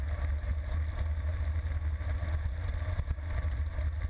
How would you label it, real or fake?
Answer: real